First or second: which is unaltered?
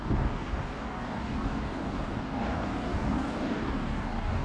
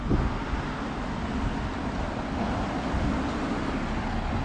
second